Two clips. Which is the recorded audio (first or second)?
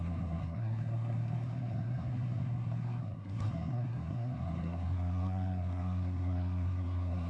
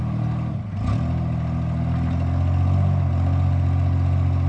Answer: second